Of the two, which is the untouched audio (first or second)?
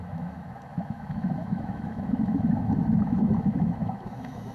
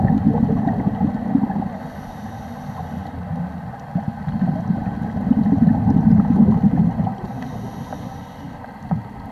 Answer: second